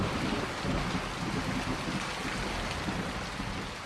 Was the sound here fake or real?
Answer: real